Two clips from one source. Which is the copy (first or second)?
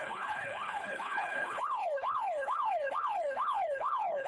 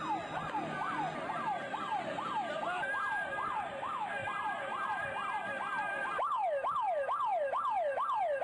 first